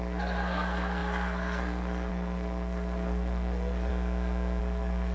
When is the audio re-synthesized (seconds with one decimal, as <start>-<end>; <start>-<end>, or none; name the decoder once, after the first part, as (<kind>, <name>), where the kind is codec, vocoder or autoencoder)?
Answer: 0.0-3.9 (codec, SNAC); 4.6-5.1